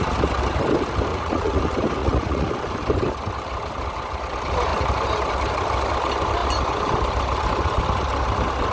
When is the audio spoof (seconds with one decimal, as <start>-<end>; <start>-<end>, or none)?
1.1-1.6; 2.0-2.5